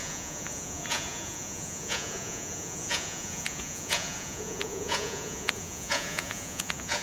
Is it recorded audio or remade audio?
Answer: remade